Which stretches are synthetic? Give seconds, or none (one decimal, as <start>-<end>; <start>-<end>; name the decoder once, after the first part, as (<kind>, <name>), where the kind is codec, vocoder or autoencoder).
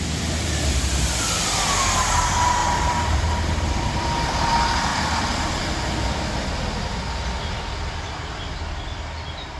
2.6-4.5 (vocoder, BigVGAN v2); 4.9-5.6